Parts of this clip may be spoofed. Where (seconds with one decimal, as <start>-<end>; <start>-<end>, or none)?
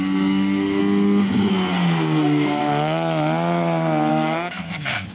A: 0.0-0.8; 1.5-2.6; 4.1-5.1